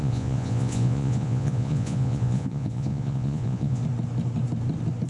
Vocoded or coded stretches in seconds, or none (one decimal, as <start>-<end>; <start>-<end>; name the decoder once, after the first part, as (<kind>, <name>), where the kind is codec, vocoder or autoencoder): 0.0-3.8 (vocoder, Vocos)